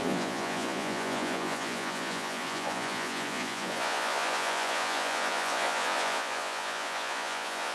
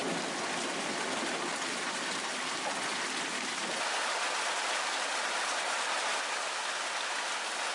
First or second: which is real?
second